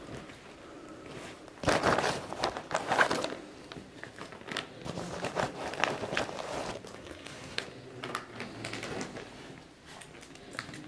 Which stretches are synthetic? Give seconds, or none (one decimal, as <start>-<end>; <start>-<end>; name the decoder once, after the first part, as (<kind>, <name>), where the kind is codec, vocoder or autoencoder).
7.0-7.6 (codec, SNAC)